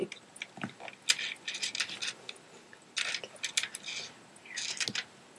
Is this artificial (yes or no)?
no